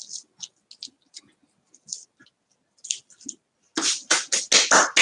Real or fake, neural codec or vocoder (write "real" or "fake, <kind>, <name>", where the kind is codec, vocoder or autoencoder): real